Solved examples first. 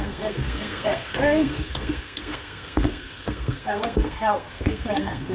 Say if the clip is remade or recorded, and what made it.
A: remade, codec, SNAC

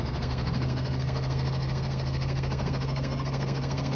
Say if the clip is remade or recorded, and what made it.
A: remade, codec, SNAC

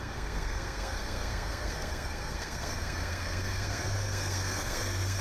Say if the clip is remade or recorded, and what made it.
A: remade, codec, SNAC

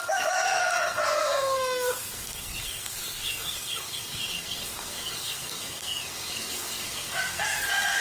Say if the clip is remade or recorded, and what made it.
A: remade, codec, SNAC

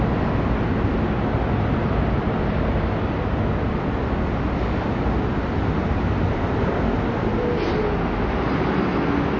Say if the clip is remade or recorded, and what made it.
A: recorded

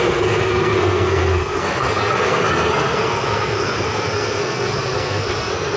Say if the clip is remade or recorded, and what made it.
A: remade, codec, SNAC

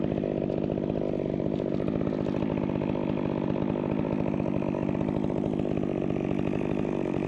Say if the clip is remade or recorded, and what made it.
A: recorded